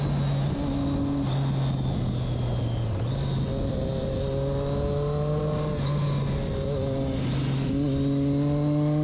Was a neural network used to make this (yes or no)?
no